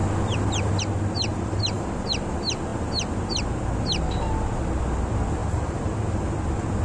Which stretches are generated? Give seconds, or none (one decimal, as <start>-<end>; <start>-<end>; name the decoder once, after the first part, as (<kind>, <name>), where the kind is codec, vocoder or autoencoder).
1.3-1.9 (vocoder, BigVGAN v2); 5.4-5.9